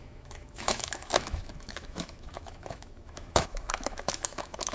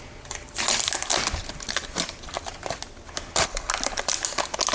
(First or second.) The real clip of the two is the second